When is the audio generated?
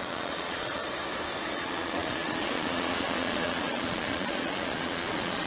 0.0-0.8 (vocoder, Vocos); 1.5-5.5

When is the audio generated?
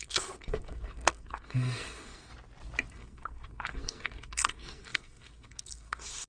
0.0-2.3 (codec, SNAC); 2.9-6.3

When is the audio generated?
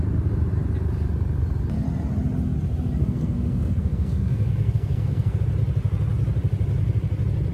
3.0-5.4 (codec, SNAC)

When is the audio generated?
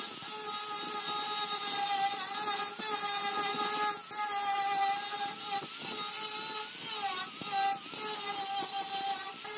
none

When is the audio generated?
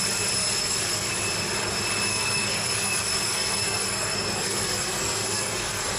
0.4-1.1 (codec, SNAC); 2.1-6.0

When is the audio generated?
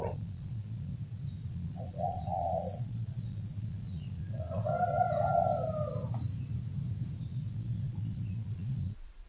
0.0-0.9 (vocoder, Vocos); 1.5-4.7; 7.2-9.3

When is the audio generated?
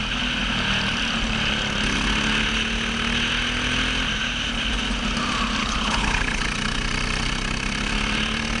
5.6-6.4 (codec, HILCodec)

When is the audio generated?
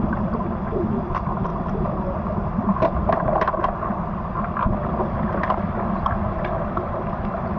0.0-7.6 (vocoder, BigVGAN v2)